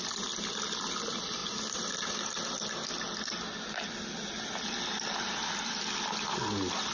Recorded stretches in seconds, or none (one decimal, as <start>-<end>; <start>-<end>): 0.0-6.9